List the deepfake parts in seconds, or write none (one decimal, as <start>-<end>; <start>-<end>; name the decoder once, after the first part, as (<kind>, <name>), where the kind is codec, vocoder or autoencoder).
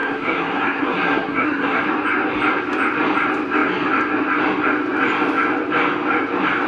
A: 0.0-1.8 (codec, SNAC)